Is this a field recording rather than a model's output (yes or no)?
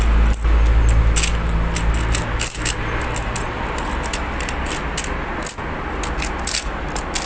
yes